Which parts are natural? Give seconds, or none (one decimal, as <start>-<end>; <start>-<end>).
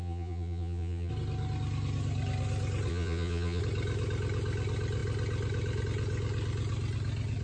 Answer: 1.1-2.9; 3.6-7.4